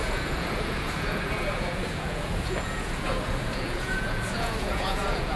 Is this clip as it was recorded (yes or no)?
no